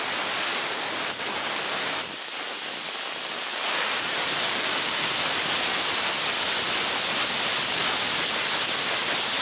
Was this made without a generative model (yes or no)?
yes